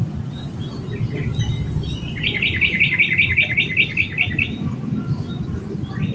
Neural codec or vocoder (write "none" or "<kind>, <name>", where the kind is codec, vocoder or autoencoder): none